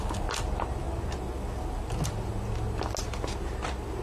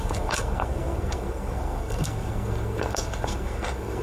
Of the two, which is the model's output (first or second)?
second